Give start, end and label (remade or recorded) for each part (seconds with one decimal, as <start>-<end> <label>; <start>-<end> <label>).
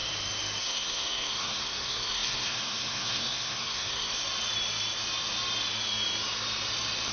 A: 0.0-0.6 recorded; 0.6-4.1 remade; 4.1-7.1 recorded